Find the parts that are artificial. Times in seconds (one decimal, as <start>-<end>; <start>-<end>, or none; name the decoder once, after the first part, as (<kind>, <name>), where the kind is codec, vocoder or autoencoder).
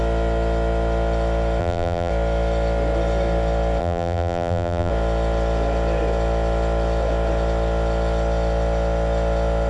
1.6-2.1 (vocoder, BigVGAN v2); 3.8-4.9